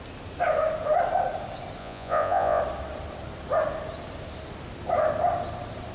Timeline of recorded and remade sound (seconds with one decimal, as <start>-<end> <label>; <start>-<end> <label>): 0.0-1.8 recorded; 1.8-2.6 remade; 2.6-5.9 recorded